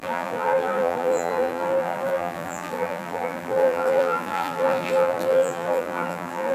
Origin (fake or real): fake